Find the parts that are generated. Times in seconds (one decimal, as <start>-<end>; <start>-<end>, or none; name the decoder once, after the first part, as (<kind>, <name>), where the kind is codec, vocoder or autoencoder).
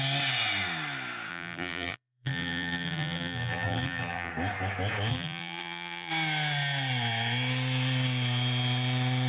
1.3-4.3 (vocoder, BigVGAN v2); 5.1-6.1